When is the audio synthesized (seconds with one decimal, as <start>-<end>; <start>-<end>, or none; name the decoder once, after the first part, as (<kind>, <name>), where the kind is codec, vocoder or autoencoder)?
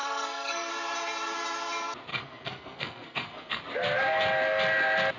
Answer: 0.0-0.7 (codec, SNAC); 2.1-3.6